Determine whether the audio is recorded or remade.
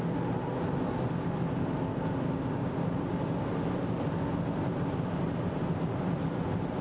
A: recorded